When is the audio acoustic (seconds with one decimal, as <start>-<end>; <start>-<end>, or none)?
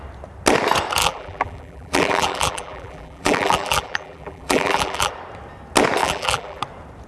0.0-1.0; 5.1-6.0; 6.6-7.1